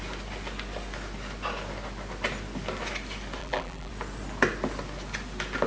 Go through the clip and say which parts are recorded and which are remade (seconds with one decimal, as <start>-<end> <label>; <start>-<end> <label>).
0.0-3.4 recorded; 3.4-3.9 remade; 3.9-5.7 recorded